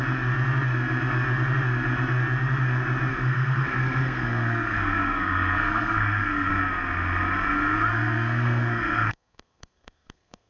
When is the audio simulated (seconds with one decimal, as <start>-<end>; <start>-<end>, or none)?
3.1-6.5; 7.9-10.5